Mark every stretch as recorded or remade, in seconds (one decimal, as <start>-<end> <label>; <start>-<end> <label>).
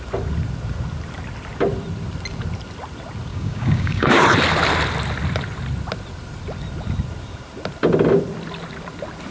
0.0-3.3 recorded; 3.3-4.2 remade; 4.2-9.3 recorded